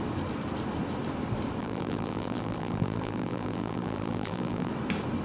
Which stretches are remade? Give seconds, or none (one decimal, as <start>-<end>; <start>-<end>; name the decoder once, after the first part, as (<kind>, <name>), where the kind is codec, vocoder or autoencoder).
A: 1.6-4.7 (vocoder, BigVGAN v2)